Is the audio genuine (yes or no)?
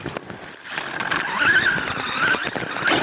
yes